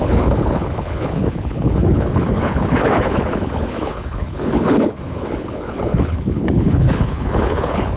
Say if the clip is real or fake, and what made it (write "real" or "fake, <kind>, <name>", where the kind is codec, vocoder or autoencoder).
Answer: fake, codec, HILCodec